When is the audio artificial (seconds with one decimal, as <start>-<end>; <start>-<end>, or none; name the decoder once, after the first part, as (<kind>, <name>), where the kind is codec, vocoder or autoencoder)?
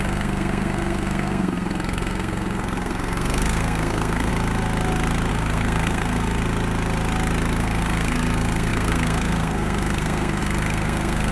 0.0-4.3 (codec, SNAC); 5.3-6.4; 7.6-11.3